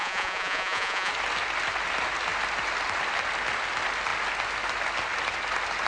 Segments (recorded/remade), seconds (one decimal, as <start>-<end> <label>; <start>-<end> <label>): 0.0-1.1 remade; 1.1-5.9 recorded